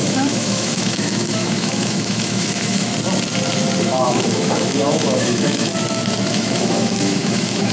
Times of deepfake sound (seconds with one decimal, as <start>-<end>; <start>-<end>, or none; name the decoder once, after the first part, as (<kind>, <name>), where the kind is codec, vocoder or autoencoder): 0.0-2.9 (autoencoder, DAC-VAE); 3.8-5.7; 6.3-7.7